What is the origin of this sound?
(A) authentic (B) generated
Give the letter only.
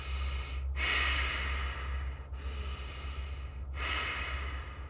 A